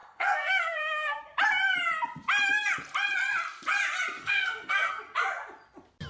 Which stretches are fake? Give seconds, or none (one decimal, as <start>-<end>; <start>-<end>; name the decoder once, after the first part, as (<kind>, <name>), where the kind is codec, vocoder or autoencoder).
0.0-1.2 (codec, SNAC); 4.2-5.0